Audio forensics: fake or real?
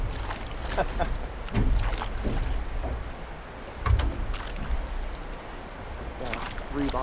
real